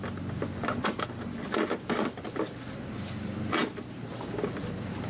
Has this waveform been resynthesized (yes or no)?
no